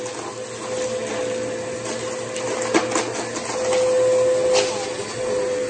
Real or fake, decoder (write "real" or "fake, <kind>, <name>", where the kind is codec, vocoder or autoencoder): real